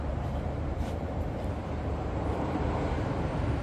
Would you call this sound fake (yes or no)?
yes